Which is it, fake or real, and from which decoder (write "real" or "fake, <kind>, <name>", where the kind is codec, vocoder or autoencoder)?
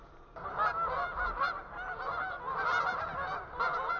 real